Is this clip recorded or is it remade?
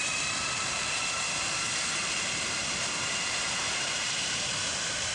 remade